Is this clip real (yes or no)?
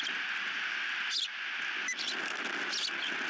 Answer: yes